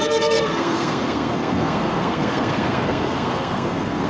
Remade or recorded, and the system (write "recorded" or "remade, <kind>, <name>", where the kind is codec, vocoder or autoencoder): remade, codec, SNAC